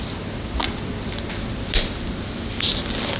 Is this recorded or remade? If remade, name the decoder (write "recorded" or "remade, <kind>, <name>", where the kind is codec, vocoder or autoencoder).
recorded